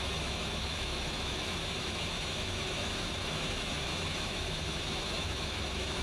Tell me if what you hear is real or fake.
fake